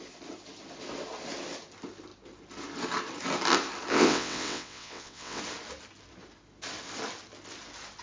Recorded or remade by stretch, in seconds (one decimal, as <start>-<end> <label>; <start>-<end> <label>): 0.0-3.9 recorded; 3.9-5.4 remade; 5.4-8.0 recorded